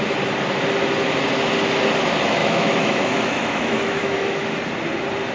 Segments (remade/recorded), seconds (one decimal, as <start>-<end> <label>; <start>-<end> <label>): 0.0-2.4 recorded; 2.4-4.6 remade; 4.6-5.3 recorded